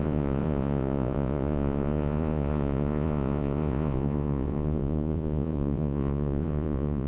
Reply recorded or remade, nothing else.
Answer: remade